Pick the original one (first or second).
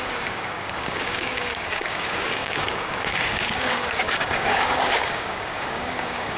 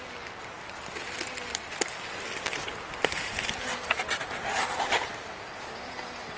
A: second